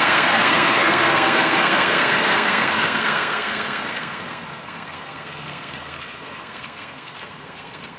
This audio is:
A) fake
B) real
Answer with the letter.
A